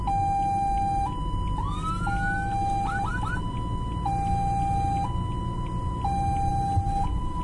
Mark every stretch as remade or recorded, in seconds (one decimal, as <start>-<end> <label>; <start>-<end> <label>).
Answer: 0.0-7.4 recorded